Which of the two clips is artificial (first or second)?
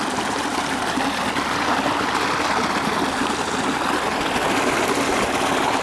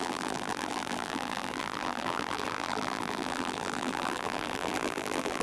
second